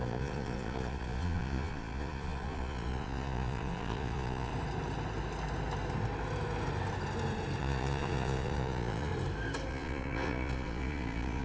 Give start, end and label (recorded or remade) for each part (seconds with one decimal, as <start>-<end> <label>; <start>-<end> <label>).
0.0-4.5 remade; 4.5-7.6 recorded; 7.6-9.1 remade; 9.1-9.7 recorded; 9.7-11.4 remade